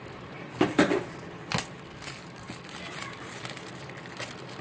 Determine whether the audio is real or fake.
real